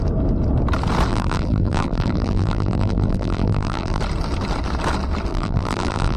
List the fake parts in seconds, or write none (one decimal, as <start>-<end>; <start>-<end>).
1.1-4.0; 5.3-6.2